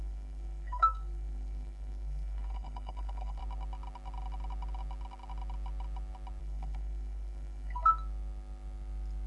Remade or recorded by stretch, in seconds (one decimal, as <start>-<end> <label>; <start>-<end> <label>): 0.0-3.4 remade; 3.4-6.4 recorded; 6.4-7.9 remade; 7.9-9.3 recorded